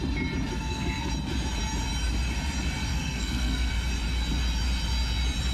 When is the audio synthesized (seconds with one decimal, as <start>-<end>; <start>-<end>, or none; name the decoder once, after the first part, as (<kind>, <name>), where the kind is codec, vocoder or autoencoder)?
0.5-1.1 (codec, SNAC); 2.9-3.7